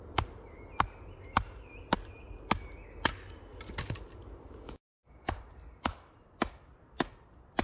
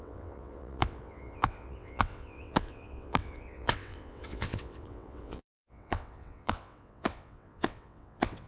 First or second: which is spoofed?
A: second